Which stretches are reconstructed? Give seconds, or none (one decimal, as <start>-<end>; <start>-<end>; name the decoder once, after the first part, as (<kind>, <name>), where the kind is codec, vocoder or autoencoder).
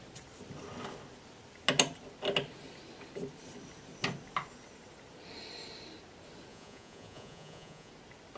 6.5-7.9 (vocoder, Vocos)